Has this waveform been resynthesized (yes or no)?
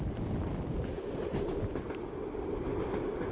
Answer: no